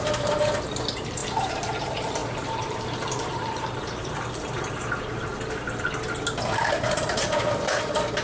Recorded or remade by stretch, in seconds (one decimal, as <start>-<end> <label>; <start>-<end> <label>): 0.0-5.3 remade; 5.3-6.6 recorded; 6.6-8.2 remade